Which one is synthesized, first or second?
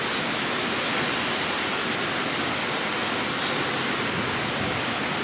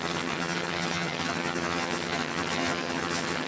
second